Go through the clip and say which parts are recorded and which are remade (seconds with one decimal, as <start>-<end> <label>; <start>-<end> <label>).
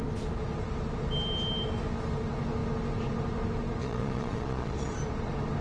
0.0-3.8 recorded; 3.8-4.9 remade; 4.9-5.6 recorded